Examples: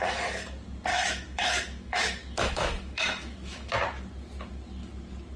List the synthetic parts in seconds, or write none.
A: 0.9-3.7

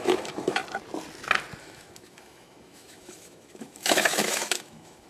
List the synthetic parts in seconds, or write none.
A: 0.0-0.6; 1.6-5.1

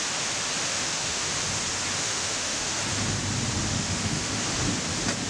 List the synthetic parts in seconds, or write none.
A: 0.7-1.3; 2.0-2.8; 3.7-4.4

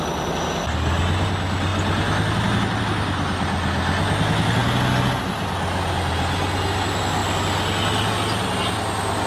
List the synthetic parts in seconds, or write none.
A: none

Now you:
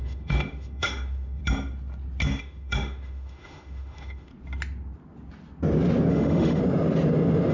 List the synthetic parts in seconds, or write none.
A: 0.0-1.4; 2.4-4.3; 6.1-6.6

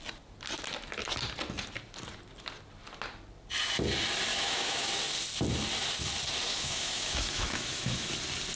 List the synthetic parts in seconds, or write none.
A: 4.3-4.9; 6.5-8.1

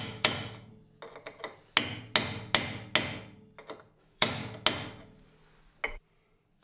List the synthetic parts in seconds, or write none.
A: 0.0-0.7; 4.0-4.4